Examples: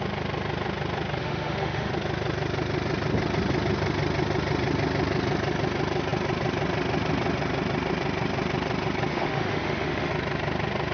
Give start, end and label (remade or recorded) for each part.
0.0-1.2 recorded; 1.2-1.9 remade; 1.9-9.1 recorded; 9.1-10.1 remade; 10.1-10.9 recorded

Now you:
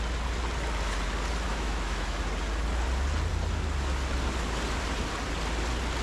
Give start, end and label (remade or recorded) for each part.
0.0-1.5 recorded; 1.5-2.2 remade; 2.2-6.0 recorded

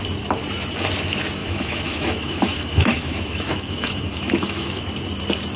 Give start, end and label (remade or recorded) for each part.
0.0-1.4 recorded; 1.4-4.8 remade; 4.8-5.6 recorded

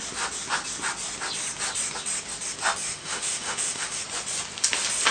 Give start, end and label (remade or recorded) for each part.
0.0-2.9 recorded; 2.9-4.0 remade; 4.0-5.1 recorded

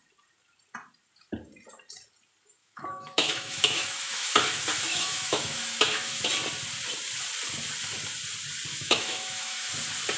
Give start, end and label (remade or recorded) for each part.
0.0-2.6 recorded; 2.6-4.3 remade; 4.3-4.9 recorded; 4.9-6.2 remade; 6.2-8.7 recorded; 8.7-9.7 remade; 9.7-10.2 recorded